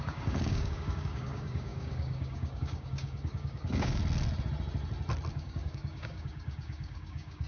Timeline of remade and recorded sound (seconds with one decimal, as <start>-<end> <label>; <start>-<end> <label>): 0.0-4.0 remade; 4.0-5.3 recorded; 5.3-7.5 remade